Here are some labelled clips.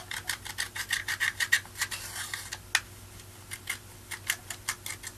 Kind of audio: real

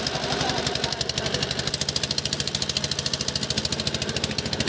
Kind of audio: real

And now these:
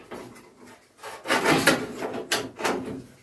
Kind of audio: real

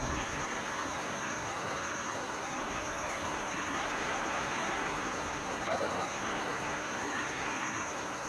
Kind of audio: fake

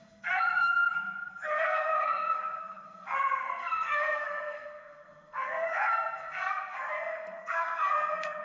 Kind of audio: fake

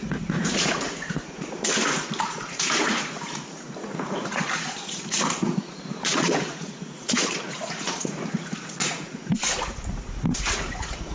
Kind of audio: fake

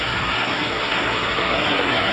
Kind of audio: fake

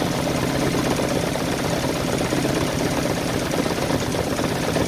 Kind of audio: real